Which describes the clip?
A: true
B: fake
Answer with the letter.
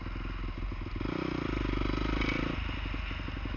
A